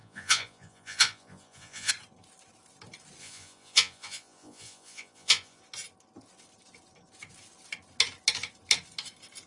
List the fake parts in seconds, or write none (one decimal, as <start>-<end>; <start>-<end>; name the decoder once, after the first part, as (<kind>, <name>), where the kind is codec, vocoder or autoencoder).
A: 0.0-1.9 (vocoder, Vocos); 3.2-5.6